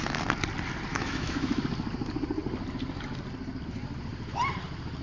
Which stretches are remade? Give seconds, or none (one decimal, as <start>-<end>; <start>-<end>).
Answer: 0.9-1.6